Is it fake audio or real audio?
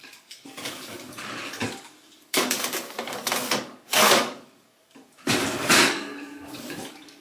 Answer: fake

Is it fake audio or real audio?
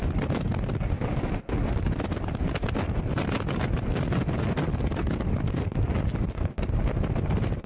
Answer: real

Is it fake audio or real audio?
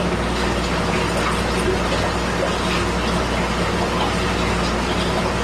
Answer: real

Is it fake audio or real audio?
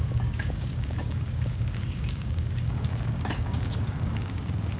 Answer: fake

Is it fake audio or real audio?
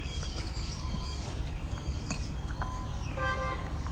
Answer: fake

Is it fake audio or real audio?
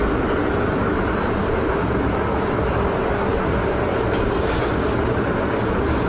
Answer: real